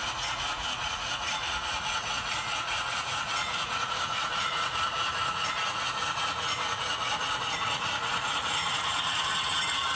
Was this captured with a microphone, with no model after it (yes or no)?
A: no